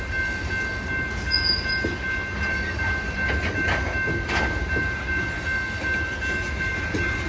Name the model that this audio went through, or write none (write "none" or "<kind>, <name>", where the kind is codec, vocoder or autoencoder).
none